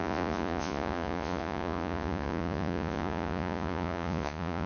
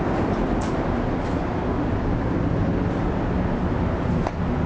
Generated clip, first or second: first